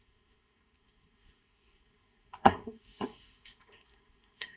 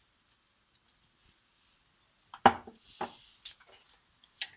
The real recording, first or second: second